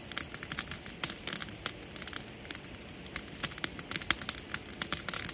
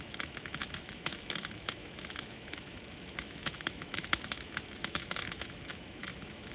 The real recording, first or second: first